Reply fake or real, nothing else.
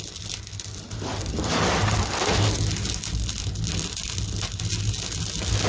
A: real